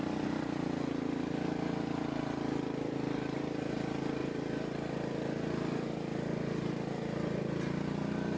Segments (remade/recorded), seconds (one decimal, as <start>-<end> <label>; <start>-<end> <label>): 0.0-8.4 recorded